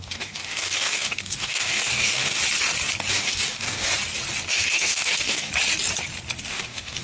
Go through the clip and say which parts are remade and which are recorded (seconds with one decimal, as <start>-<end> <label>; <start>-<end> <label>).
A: 0.0-2.4 remade; 2.4-3.1 recorded; 3.1-3.9 remade; 3.9-4.5 recorded; 4.5-5.5 remade; 5.5-6.5 recorded; 6.5-7.0 remade